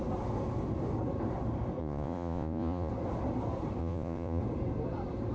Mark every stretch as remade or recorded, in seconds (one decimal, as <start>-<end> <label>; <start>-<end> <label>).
0.0-1.8 recorded; 1.8-2.9 remade; 2.9-3.8 recorded; 3.8-4.4 remade; 4.4-5.3 recorded